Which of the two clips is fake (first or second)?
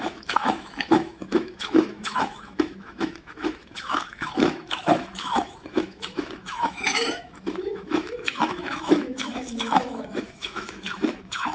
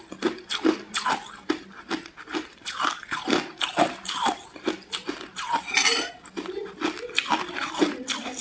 first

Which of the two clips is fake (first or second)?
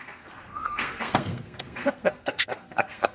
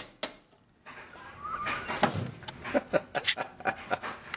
first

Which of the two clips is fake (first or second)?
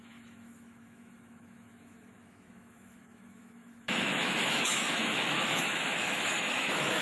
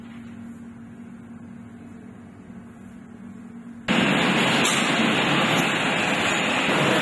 first